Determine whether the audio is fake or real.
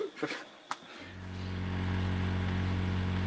real